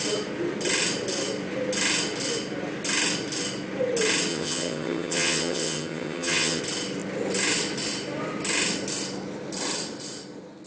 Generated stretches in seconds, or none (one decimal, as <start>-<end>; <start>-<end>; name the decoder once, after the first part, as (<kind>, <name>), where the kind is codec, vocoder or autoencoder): 4.3-6.6 (vocoder, HiFi-GAN)